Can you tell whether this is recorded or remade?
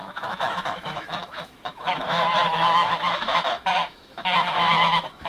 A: remade